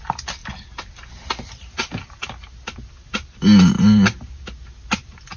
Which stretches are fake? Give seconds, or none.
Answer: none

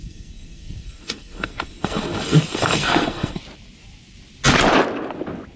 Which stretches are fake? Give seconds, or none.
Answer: 0.0-3.4 (codec, SNAC)

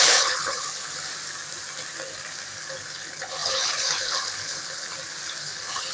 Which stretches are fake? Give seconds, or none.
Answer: 0.0-1.1 (codec, HILCodec); 2.6-4.9; 5.4-5.9

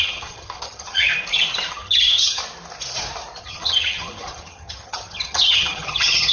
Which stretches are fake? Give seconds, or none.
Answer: 0.0-1.1 (vocoder, HiFi-GAN); 1.7-2.4; 3.4-6.3